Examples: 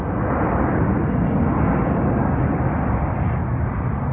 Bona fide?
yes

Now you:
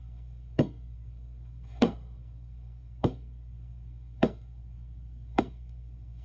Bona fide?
no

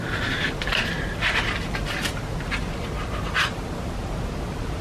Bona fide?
yes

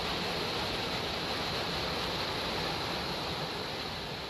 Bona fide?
yes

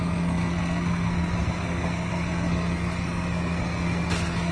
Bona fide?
no